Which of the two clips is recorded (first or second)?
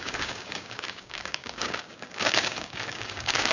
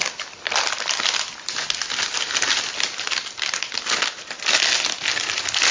second